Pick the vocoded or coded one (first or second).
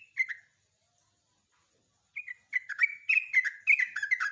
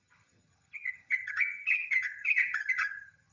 second